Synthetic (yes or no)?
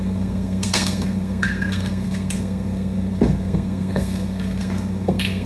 yes